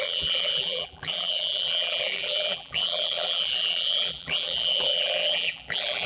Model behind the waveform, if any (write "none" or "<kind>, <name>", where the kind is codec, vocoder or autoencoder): vocoder, BigVGAN v2